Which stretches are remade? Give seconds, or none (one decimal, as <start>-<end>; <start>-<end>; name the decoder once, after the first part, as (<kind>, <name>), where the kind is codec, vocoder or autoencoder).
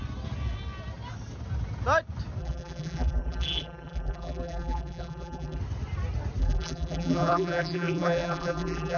2.4-5.6 (vocoder, BigVGAN v2); 6.4-9.0